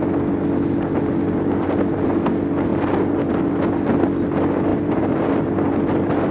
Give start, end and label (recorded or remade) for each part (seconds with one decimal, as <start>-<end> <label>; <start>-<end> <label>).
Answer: 0.0-4.7 recorded; 4.7-5.5 remade; 5.5-6.3 recorded